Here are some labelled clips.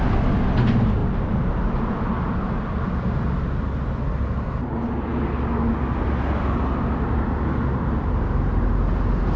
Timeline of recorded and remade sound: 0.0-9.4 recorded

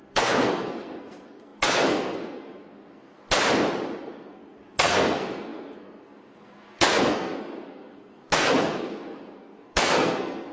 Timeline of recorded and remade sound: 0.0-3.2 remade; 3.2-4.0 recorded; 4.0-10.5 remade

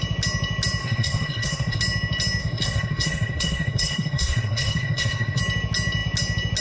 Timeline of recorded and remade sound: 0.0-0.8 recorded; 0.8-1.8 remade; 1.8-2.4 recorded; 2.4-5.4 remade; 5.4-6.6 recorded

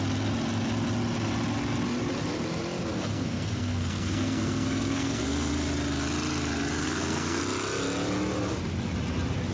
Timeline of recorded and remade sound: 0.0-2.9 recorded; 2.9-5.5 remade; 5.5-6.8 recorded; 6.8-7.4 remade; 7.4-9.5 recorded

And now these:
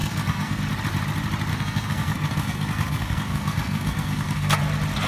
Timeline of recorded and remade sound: 0.0-0.6 remade; 0.6-1.5 recorded; 1.5-4.6 remade; 4.6-5.1 recorded